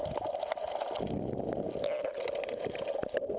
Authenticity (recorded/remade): recorded